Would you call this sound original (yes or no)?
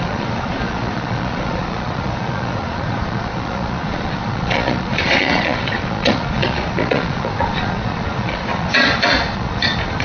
no